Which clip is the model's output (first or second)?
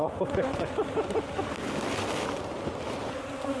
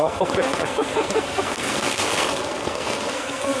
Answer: second